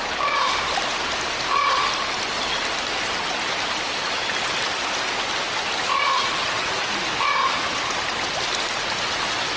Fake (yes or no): no